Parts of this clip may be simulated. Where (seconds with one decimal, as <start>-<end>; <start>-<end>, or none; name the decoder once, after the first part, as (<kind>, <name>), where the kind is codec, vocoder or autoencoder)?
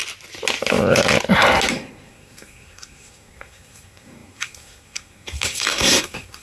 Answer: 1.7-6.4 (codec, SNAC)